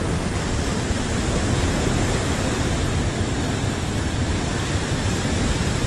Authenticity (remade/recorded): recorded